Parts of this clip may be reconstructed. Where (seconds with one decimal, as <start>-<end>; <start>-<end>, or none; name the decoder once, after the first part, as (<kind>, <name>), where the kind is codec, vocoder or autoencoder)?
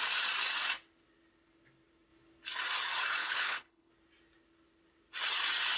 3.2-3.9 (codec, HILCodec)